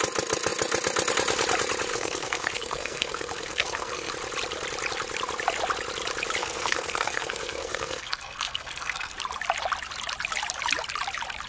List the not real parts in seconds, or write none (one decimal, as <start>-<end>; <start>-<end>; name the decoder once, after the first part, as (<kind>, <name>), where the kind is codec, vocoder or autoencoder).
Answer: 1.9-4.1 (codec, SNAC); 6.4-9.2

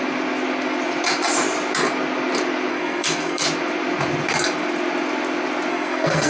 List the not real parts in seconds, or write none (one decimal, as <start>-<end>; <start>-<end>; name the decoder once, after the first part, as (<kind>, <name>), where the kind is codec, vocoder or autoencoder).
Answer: 2.7-3.4 (codec, SNAC); 5.7-6.3